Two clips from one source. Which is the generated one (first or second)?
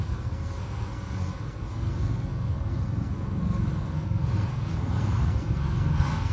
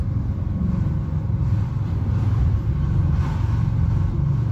first